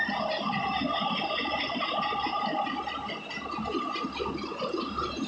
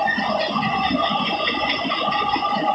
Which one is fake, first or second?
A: second